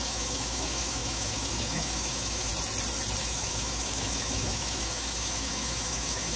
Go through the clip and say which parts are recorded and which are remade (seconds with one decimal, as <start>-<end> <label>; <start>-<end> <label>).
0.0-2.5 remade; 2.5-3.2 recorded; 3.2-6.4 remade